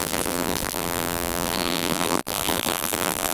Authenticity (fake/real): fake